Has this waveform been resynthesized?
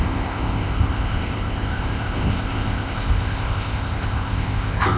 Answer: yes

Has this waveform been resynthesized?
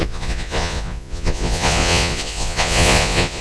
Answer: yes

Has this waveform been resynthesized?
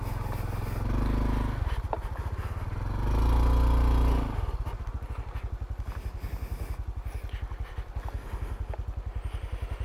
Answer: no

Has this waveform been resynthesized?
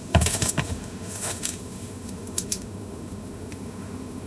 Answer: yes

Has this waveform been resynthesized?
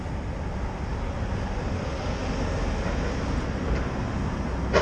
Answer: no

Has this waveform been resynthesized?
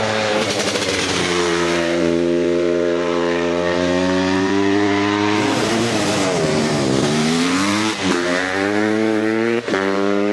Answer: yes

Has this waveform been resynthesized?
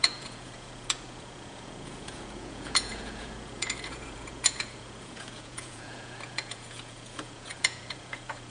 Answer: yes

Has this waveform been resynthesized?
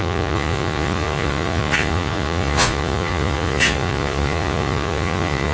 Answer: yes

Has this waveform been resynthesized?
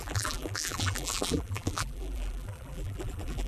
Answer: yes